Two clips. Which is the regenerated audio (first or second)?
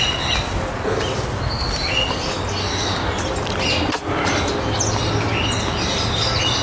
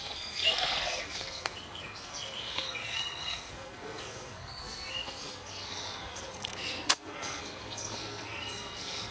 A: second